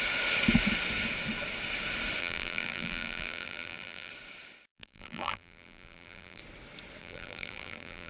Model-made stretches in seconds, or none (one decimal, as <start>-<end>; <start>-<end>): 2.2-4.1; 4.7-6.4; 7.0-8.1